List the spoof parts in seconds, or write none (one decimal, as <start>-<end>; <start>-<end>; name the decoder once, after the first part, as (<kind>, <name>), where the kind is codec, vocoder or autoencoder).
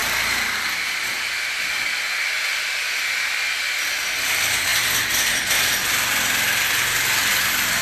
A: none